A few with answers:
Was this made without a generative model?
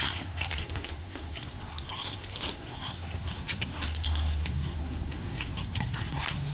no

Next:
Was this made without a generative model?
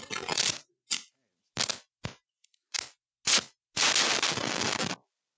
yes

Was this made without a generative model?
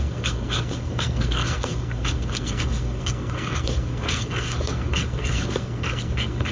no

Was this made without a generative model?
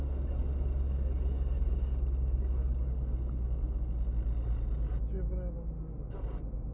yes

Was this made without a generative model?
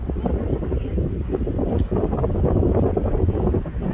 yes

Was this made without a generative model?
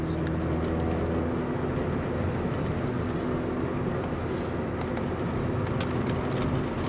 yes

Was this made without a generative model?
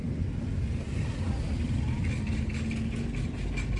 yes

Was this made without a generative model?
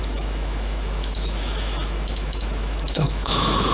no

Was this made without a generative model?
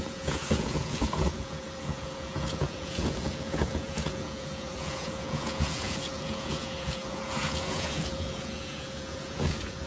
no